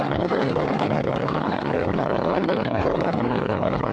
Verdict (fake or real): fake